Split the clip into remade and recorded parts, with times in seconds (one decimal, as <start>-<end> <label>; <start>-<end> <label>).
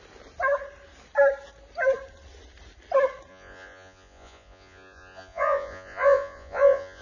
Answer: 0.0-3.3 recorded; 3.3-7.0 remade